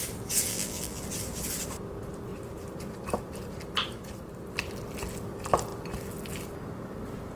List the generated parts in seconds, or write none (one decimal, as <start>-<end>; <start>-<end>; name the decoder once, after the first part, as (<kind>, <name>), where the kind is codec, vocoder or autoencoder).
0.5-1.0 (vocoder, BigVGAN v2)